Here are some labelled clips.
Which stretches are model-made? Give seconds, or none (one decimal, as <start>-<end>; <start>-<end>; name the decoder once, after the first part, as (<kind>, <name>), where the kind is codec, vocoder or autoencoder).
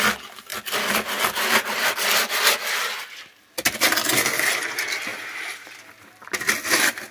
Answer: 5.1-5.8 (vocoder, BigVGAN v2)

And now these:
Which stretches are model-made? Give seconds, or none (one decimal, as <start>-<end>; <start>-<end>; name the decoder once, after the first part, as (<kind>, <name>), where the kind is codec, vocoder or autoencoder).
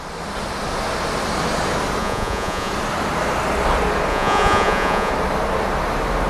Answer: 2.0-2.7 (vocoder, Vocos); 4.1-5.1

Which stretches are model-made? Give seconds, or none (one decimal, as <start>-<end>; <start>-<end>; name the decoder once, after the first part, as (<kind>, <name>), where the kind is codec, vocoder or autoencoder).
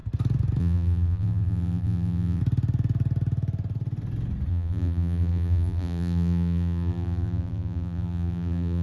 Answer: 0.6-2.4 (vocoder, BigVGAN v2); 4.5-8.8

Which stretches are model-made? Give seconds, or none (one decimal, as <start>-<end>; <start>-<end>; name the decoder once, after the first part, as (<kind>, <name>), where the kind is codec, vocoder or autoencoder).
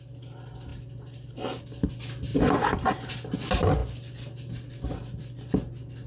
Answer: 2.3-3.1 (vocoder, BigVGAN v2)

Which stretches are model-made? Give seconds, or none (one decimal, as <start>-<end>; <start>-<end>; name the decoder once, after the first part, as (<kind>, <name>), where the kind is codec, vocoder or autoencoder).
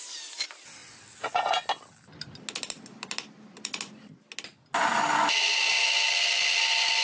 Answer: none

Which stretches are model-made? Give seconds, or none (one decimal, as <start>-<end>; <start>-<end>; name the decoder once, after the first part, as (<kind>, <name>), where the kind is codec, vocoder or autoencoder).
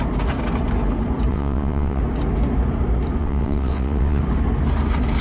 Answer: 1.3-2.0 (vocoder, WaveNeXt); 3.2-4.2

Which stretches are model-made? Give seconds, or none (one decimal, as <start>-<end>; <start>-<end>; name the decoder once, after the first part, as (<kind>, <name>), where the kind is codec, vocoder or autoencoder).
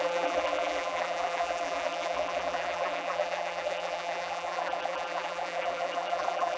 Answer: 0.0-6.6 (vocoder, BigVGAN v2)